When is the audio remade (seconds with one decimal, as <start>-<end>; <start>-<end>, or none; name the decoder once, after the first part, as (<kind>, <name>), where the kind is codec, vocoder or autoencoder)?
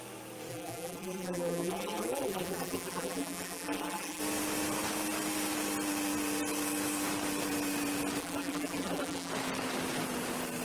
0.5-4.2 (vocoder, BigVGAN v2); 8.2-9.3